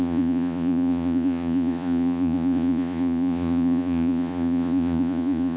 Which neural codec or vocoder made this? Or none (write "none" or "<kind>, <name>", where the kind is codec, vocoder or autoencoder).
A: vocoder, Vocos